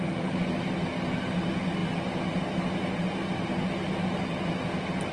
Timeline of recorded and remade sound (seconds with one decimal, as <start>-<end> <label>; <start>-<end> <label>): 0.0-5.1 recorded